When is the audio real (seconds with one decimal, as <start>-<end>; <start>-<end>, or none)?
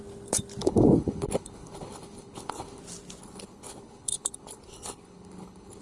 0.0-0.6; 2.8-3.2